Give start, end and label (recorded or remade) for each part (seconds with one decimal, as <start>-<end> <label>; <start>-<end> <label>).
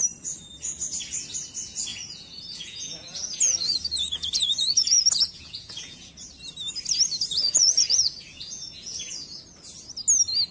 0.0-1.9 recorded; 1.9-6.1 remade; 6.1-7.3 recorded; 7.3-9.4 remade; 9.4-10.5 recorded